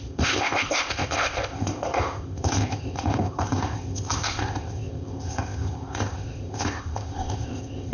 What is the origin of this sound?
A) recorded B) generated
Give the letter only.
B